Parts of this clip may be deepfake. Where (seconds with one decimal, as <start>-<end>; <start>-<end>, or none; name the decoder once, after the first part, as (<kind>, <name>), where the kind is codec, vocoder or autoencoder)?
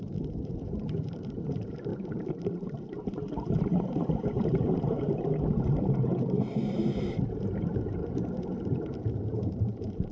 0.0-8.0 (vocoder, BigVGAN v2); 8.6-10.1